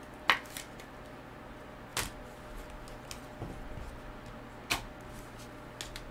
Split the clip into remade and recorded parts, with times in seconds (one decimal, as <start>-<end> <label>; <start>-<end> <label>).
0.0-6.1 recorded